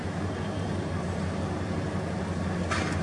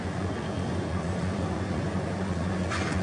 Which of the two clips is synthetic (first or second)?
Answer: second